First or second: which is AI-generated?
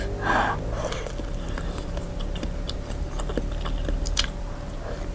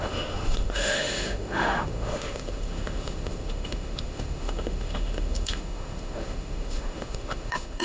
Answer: second